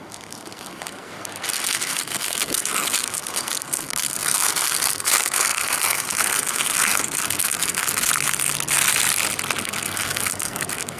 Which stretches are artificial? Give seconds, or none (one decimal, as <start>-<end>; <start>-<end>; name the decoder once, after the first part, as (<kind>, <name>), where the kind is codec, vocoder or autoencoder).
0.0-8.1 (codec, SNAC); 9.6-11.0